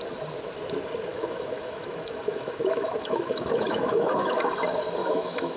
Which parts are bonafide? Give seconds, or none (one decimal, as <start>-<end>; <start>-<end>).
0.0-1.1; 4.5-5.0